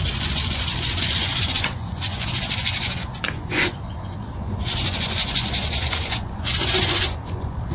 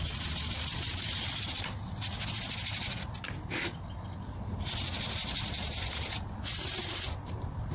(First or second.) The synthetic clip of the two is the first